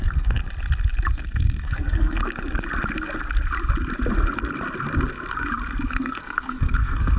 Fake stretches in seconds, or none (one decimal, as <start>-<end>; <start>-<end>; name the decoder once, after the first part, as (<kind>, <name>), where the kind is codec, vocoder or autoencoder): 0.0-0.4 (codec, SNAC); 1.1-2.2; 5.9-7.2